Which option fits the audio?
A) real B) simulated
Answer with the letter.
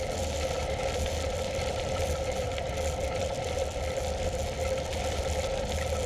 B